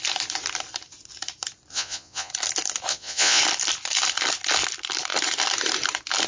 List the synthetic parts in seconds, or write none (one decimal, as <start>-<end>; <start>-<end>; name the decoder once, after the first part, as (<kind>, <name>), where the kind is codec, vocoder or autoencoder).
1.7-2.3 (vocoder, Vocos); 2.9-3.4